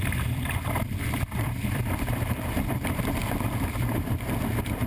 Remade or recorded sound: remade